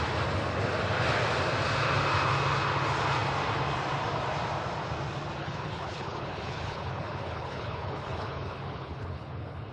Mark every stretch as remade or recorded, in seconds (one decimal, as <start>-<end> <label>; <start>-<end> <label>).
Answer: 0.0-5.4 recorded; 5.4-9.7 remade